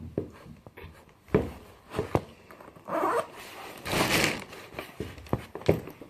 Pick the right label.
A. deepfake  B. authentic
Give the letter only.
B